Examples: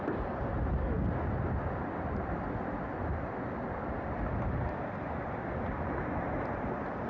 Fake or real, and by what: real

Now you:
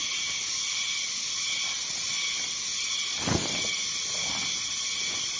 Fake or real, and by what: real